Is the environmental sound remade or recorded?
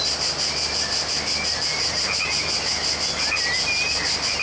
recorded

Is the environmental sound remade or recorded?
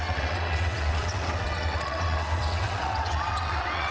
remade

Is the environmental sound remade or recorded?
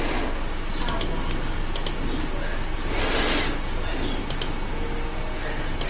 recorded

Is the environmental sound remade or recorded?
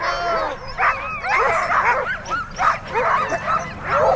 recorded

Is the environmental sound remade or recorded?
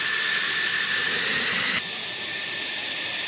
recorded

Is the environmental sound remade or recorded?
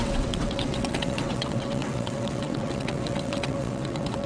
remade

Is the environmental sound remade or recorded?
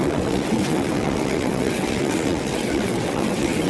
remade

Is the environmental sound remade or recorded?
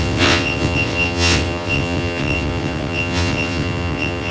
remade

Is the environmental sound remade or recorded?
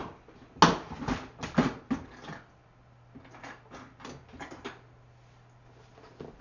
recorded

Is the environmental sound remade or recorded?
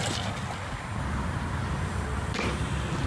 recorded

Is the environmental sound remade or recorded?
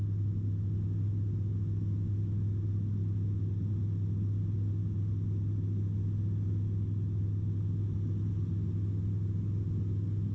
recorded